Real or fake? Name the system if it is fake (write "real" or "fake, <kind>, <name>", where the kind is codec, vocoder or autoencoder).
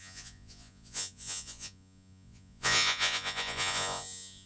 fake, vocoder, Vocos